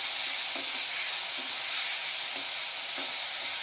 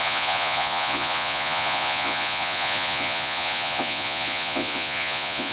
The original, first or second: first